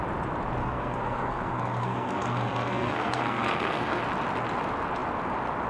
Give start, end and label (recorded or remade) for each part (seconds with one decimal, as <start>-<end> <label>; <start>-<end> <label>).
0.0-0.6 recorded; 0.6-4.0 remade; 4.0-5.7 recorded